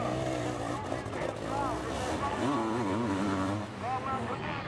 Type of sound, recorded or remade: recorded